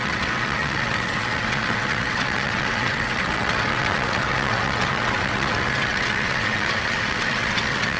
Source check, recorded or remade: remade